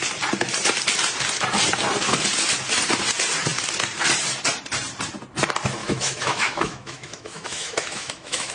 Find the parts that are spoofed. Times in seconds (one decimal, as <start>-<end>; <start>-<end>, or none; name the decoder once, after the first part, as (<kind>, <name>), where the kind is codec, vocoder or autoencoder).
5.8-8.5 (autoencoder, DAC-VAE)